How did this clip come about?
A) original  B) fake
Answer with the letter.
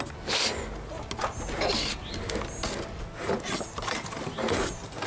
A